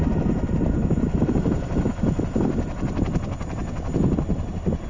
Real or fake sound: real